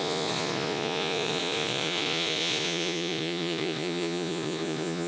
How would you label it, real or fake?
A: fake